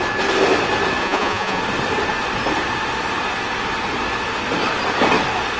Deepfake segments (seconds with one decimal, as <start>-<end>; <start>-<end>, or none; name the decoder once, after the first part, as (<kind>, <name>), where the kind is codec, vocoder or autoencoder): 1.0-1.6 (vocoder, Vocos)